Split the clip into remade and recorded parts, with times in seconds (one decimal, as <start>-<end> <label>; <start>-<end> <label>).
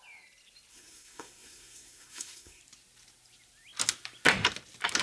0.0-0.7 recorded; 0.7-2.6 remade; 2.6-5.0 recorded